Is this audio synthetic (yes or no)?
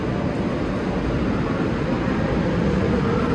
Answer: no